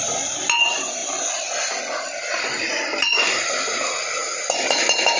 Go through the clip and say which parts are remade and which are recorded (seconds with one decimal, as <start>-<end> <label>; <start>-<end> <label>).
0.0-5.2 recorded

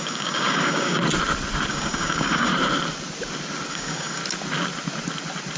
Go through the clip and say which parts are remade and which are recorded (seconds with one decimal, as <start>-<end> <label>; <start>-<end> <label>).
0.0-1.0 remade; 1.0-1.7 recorded; 1.7-2.5 remade; 2.5-3.7 recorded; 3.7-4.2 remade; 4.2-5.6 recorded

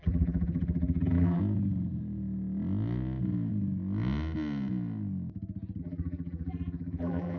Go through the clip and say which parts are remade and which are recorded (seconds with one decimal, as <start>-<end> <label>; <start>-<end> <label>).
0.0-1.4 remade; 1.4-5.8 recorded; 5.8-7.4 remade

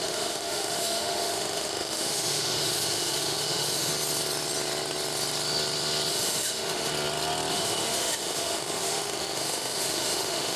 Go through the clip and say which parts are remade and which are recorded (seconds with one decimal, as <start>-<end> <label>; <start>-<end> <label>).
0.0-3.9 remade; 3.9-6.1 recorded; 6.1-6.9 remade; 6.9-7.5 recorded; 7.5-10.6 remade

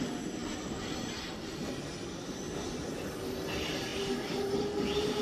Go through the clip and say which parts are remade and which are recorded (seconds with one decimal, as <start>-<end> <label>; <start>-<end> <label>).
0.0-5.2 recorded

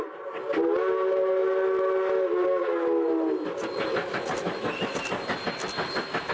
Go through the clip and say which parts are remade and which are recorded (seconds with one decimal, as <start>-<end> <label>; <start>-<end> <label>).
0.0-6.3 recorded

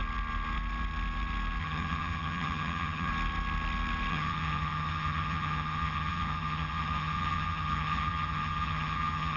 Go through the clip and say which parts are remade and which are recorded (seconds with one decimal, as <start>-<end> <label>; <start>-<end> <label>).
0.0-1.6 recorded; 1.6-3.1 remade; 3.1-4.1 recorded; 4.1-9.4 remade

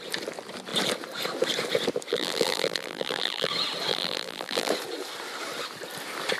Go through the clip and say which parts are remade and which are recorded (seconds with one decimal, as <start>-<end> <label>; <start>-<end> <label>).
0.0-2.1 recorded; 2.1-3.5 remade; 3.5-3.9 recorded; 3.9-4.7 remade; 4.7-6.4 recorded